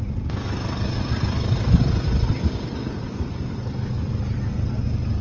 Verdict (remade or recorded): recorded